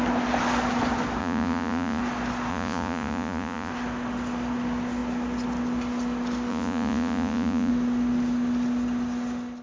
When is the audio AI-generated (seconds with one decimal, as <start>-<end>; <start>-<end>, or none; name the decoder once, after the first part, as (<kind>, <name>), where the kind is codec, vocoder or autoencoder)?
1.2-2.0 (vocoder, Vocos); 2.5-3.7; 6.5-7.7